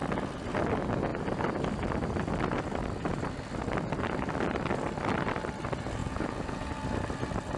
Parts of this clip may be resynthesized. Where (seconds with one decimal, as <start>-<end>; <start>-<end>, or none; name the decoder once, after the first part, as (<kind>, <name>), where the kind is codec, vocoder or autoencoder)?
6.0-6.7 (vocoder, Vocos)